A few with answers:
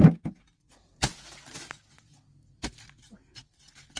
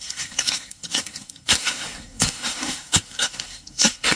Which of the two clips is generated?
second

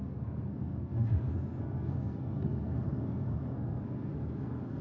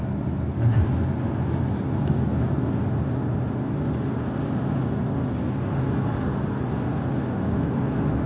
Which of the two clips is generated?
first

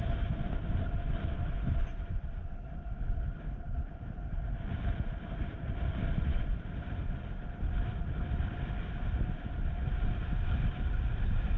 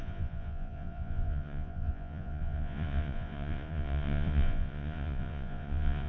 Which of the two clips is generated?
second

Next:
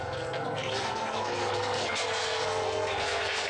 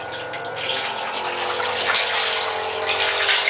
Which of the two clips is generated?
first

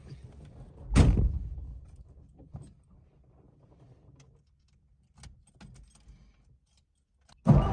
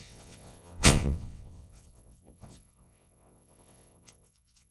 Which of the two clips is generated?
second